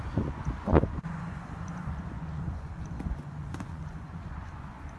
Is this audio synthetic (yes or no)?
yes